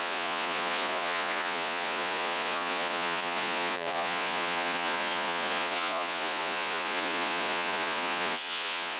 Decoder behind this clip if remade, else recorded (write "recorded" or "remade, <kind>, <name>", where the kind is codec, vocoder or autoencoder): remade, vocoder, Vocos